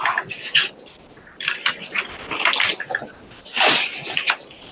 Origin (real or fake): real